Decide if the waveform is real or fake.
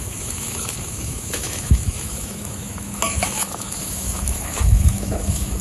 fake